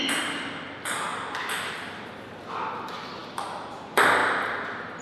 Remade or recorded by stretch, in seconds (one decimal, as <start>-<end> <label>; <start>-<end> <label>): 0.0-4.2 recorded; 4.2-5.0 remade